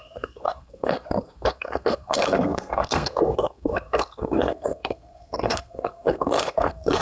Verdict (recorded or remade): remade